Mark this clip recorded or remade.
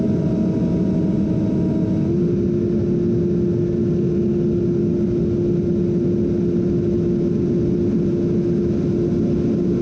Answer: recorded